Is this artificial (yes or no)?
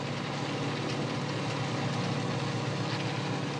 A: no